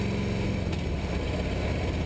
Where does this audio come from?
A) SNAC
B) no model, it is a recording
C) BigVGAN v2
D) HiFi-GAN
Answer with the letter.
B